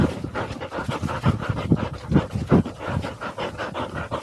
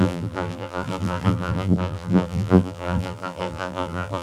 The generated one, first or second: second